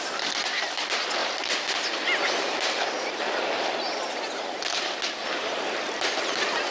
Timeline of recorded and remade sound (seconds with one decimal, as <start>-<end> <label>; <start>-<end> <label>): 0.0-6.7 recorded